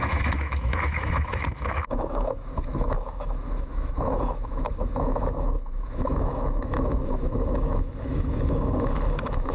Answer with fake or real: fake